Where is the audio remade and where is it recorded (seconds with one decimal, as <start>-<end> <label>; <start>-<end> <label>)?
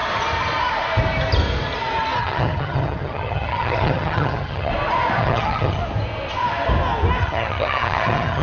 0.0-2.2 recorded; 2.2-4.7 remade; 4.7-5.2 recorded; 5.2-5.8 remade; 5.8-7.2 recorded; 7.2-8.4 remade